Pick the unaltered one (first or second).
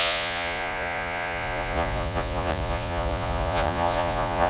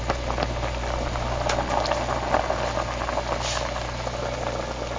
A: second